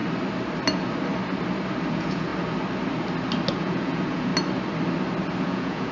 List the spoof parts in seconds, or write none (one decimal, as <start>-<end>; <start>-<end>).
1.9-2.3; 3.5-4.3; 5.4-5.9